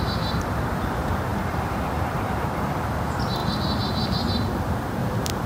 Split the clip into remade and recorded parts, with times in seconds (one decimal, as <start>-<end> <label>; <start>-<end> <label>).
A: 0.0-3.4 remade; 3.4-4.6 recorded; 4.6-5.5 remade